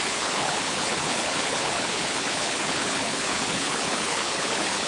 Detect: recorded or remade remade